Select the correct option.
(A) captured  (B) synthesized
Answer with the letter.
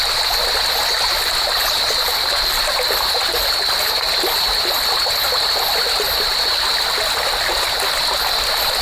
A